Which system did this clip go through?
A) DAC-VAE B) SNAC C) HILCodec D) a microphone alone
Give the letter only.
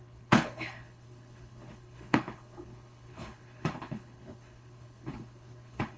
C